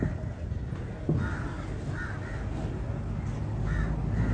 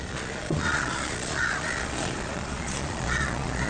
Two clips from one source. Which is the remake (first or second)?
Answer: second